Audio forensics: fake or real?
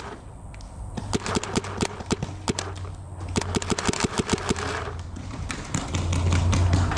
real